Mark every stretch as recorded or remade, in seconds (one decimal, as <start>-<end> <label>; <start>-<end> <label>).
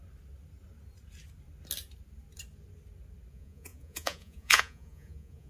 0.0-3.3 recorded; 3.3-5.5 remade